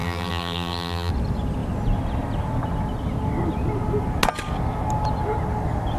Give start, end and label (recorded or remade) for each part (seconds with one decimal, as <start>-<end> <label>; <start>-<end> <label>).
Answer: 0.0-1.1 remade; 1.1-6.0 recorded